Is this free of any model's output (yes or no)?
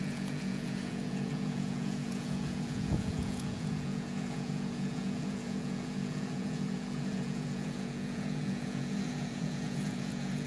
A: no